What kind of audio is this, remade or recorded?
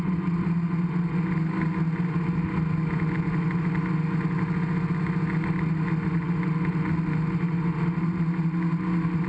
recorded